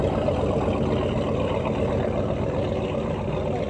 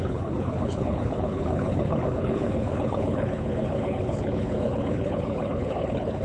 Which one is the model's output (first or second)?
second